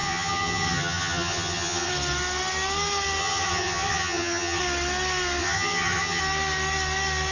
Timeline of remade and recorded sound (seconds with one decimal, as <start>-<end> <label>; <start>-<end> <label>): 0.0-1.9 remade; 1.9-3.2 recorded; 3.2-4.6 remade; 4.6-5.4 recorded; 5.4-6.2 remade; 6.2-7.3 recorded